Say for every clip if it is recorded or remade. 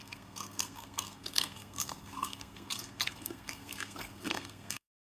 remade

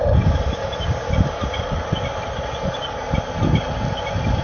recorded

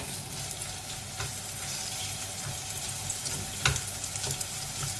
recorded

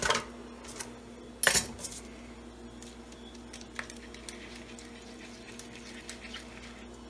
recorded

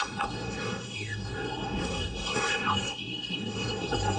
remade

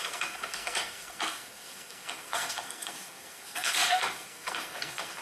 remade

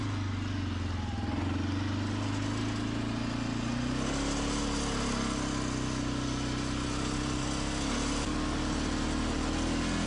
recorded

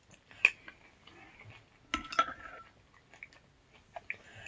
recorded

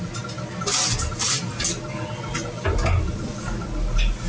recorded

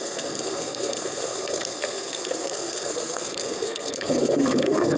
remade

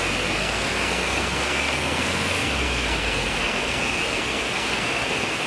remade